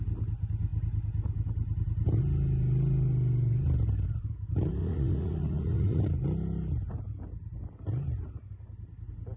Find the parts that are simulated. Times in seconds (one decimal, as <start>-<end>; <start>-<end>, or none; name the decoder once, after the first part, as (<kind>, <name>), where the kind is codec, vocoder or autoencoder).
4.8-6.0 (vocoder, Vocos)